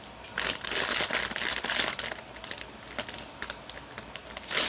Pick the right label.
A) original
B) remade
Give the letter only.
A